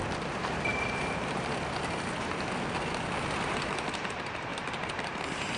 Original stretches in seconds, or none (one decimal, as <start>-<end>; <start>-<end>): 0.0-0.7; 4.1-4.5